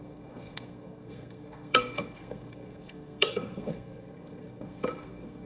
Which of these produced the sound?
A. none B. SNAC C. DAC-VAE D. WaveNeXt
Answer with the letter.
B